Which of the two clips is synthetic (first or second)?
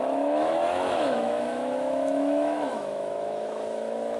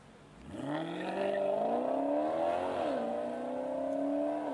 first